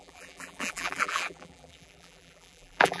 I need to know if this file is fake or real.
fake